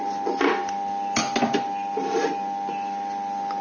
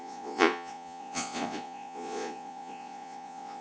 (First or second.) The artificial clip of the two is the second